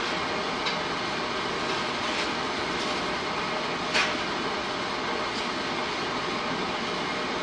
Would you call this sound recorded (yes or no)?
yes